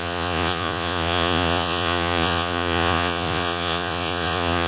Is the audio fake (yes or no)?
yes